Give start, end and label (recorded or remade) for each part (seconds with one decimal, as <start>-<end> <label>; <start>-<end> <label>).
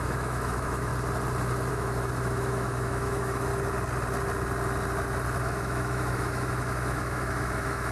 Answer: 0.0-0.9 remade; 0.9-1.7 recorded; 1.7-3.5 remade; 3.5-5.4 recorded; 5.4-7.9 remade